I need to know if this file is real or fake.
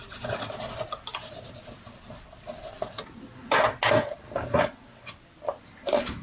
real